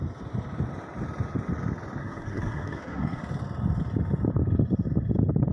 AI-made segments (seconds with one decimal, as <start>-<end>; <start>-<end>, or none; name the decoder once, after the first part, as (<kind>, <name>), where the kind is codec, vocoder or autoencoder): 2.0-3.2 (codec, SNAC)